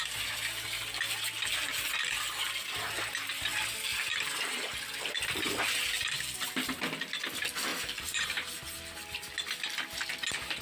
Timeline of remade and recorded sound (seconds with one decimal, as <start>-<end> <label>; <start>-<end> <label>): 0.0-3.9 recorded; 3.9-4.8 remade; 4.8-7.7 recorded; 7.7-8.5 remade; 8.5-10.6 recorded